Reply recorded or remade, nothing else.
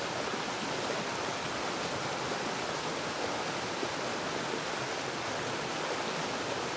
recorded